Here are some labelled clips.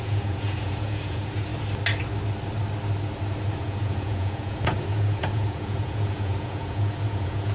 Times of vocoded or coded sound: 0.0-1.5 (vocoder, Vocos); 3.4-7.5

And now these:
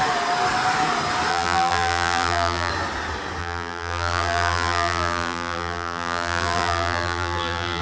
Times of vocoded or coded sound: 1.3-2.7 (vocoder, BigVGAN v2); 3.4-7.8

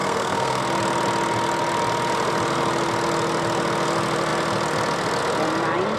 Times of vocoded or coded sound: 0.0-0.6 (codec, SNAC)

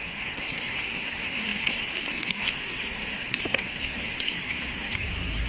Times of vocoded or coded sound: 0.0-5.5 (codec, SNAC)

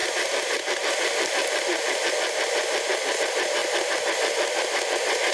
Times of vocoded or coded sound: none